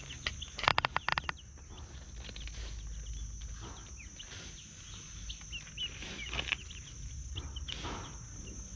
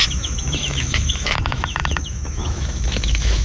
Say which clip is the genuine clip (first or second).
first